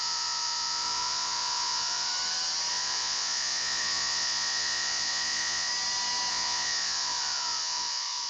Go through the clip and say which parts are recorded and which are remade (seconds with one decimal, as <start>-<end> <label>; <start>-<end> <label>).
0.0-2.1 remade; 2.1-2.7 recorded; 2.7-5.7 remade; 5.7-6.3 recorded; 6.3-8.3 remade

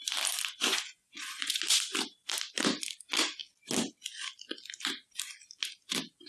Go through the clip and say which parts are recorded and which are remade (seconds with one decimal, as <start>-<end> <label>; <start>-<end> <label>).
0.0-0.7 recorded; 0.7-1.6 remade; 1.6-6.3 recorded

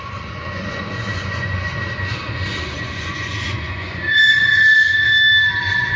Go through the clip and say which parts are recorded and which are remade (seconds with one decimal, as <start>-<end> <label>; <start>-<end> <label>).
0.0-1.8 remade; 1.8-2.3 recorded; 2.3-4.9 remade; 4.9-5.6 recorded; 5.6-6.0 remade

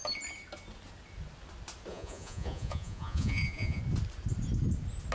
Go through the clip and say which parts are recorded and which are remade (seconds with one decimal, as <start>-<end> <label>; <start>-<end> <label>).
0.0-1.9 recorded; 1.9-3.8 remade; 3.8-5.1 recorded

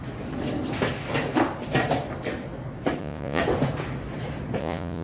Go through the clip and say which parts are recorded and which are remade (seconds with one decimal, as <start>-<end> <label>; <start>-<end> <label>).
0.0-3.0 recorded; 3.0-3.4 remade; 3.4-4.6 recorded; 4.6-5.0 remade

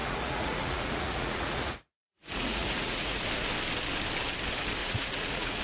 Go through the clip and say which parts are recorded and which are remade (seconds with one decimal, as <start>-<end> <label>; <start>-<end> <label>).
0.0-3.2 remade; 3.2-4.8 recorded; 4.8-5.6 remade